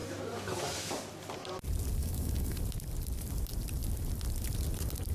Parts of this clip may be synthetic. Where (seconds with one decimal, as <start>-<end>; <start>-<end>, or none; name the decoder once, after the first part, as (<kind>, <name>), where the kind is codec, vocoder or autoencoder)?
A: 2.0-2.6 (autoencoder, DAC-VAE)